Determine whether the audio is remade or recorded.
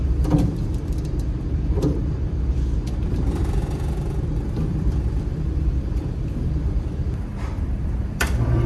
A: remade